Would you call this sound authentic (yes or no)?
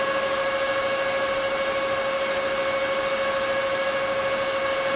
yes